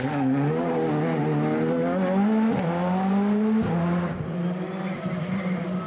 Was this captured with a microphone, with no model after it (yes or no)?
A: yes